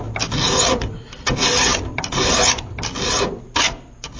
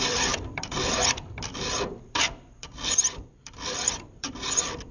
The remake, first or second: second